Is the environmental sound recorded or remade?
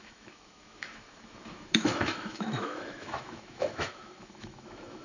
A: remade